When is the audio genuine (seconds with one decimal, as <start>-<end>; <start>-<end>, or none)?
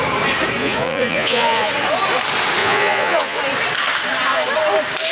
0.0-0.6; 1.7-2.6; 3.4-5.1